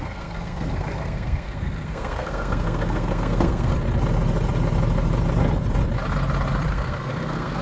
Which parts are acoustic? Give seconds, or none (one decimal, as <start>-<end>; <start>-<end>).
3.7-6.7